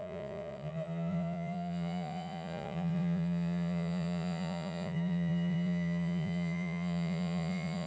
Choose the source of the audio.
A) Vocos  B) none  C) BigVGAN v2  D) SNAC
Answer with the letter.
A